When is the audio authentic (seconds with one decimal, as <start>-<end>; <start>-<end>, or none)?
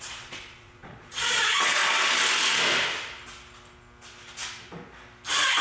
1.8-5.6